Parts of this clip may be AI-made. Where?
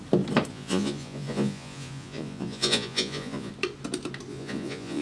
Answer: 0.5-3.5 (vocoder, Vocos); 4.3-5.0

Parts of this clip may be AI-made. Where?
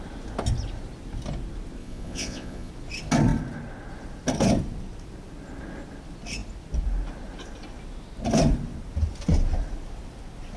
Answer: 1.8-2.7 (vocoder, Vocos)